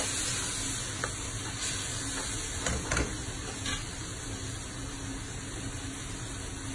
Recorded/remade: recorded